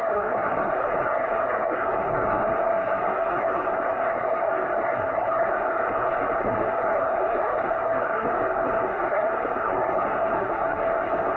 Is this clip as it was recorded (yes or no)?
no